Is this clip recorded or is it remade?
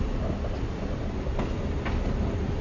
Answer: recorded